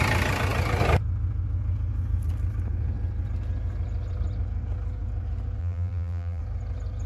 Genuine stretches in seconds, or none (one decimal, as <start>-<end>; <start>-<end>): 0.0-5.6; 6.4-7.1